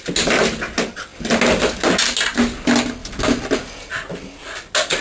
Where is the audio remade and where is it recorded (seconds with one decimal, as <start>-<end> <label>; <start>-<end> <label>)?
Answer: 0.0-5.0 recorded